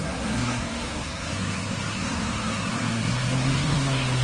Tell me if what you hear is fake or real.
fake